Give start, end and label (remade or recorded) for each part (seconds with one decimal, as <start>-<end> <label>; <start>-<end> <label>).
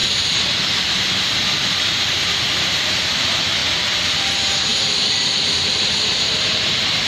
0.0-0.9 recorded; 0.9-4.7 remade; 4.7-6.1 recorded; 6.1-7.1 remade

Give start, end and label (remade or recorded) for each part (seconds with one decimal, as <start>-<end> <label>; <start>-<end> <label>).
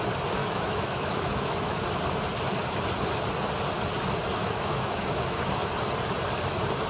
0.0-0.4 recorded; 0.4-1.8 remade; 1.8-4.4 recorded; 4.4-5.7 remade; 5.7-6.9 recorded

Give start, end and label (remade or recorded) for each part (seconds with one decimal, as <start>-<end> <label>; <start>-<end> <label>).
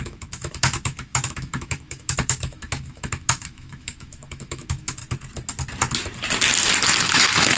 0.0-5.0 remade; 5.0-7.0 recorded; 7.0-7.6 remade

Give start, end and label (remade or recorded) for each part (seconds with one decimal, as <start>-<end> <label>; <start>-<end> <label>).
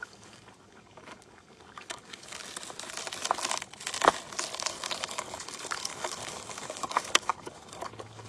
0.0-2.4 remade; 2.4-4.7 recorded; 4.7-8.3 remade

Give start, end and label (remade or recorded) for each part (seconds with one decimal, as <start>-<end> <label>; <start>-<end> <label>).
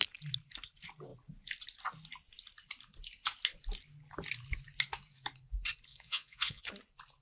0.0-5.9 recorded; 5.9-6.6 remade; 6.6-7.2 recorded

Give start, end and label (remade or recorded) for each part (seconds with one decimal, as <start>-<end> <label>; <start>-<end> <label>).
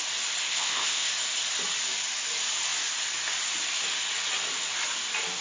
0.0-0.5 recorded; 0.5-1.1 remade; 1.1-5.4 recorded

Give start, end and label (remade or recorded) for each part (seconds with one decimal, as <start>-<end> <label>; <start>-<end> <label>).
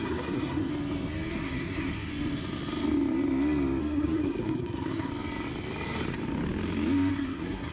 0.0-0.7 remade; 0.7-1.3 recorded; 1.3-2.1 remade; 2.1-3.8 recorded; 3.8-5.1 remade; 5.1-7.1 recorded; 7.1-7.7 remade